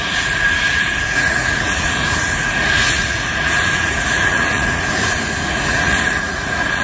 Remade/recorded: remade